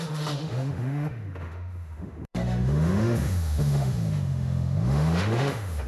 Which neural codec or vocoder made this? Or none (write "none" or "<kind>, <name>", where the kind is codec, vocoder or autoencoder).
autoencoder, DAC-VAE